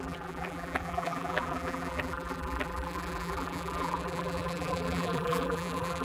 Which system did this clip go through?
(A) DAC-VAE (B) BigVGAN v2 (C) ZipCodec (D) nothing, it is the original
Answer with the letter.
B